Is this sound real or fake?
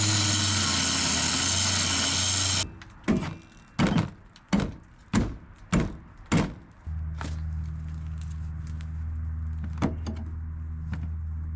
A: real